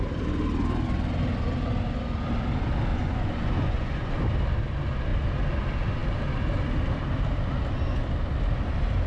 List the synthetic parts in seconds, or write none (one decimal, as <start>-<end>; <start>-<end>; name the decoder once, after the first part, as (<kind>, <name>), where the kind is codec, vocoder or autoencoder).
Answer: 2.9-4.1 (vocoder, Vocos)